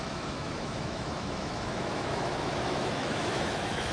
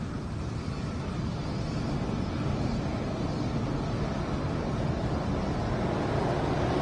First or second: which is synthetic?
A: first